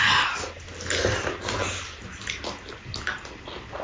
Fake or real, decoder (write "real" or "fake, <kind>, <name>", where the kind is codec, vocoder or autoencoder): real